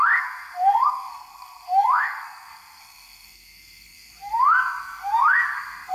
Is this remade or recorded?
remade